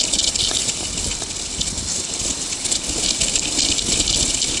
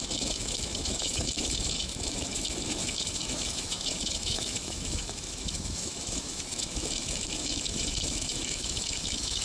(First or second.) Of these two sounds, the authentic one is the first